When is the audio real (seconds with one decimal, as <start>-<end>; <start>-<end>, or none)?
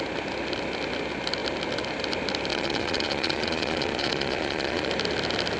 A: 0.0-2.5; 4.9-5.6